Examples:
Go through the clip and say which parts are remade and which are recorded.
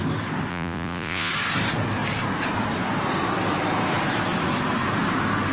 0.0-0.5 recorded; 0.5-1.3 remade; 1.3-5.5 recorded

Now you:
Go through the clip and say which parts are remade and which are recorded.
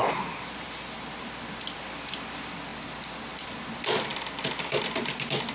0.0-5.5 recorded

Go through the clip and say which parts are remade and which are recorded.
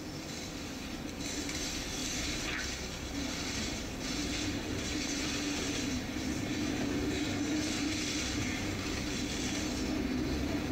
0.0-10.7 recorded